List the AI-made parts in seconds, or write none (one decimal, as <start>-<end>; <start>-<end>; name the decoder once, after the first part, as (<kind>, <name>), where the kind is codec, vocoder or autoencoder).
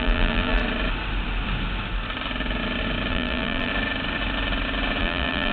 0.0-0.6 (vocoder, BigVGAN v2); 3.1-3.7; 5.0-5.5